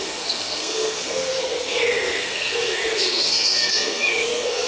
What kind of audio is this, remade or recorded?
remade